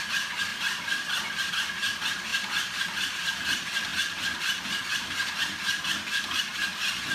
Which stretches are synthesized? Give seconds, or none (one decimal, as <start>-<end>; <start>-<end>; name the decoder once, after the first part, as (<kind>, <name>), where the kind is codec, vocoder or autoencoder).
0.5-1.5 (vocoder, BigVGAN v2)